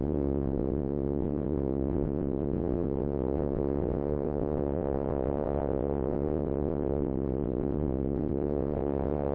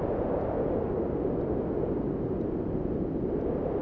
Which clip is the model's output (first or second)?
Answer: first